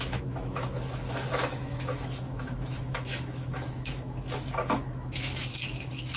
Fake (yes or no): yes